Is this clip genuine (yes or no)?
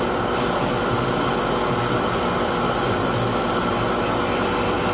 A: yes